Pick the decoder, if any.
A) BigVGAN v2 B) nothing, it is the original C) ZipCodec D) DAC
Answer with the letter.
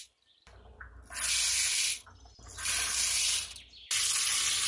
B